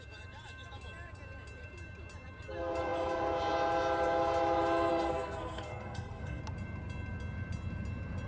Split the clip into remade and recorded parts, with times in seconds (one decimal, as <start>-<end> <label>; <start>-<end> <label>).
0.0-4.9 recorded; 4.9-6.4 remade; 6.4-8.3 recorded